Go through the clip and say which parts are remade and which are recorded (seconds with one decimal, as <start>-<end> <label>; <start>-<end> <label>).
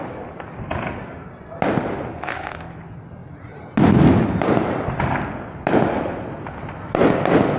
0.0-2.1 recorded; 2.1-2.7 remade; 2.7-7.6 recorded